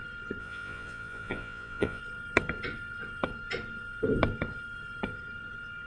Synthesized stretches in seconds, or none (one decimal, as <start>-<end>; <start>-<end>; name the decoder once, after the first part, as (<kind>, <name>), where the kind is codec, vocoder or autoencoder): 0.4-2.0 (vocoder, Vocos)